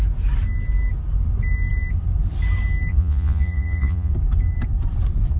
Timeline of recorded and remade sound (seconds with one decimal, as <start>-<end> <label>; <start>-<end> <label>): 0.0-2.9 recorded; 2.9-4.1 remade; 4.1-5.4 recorded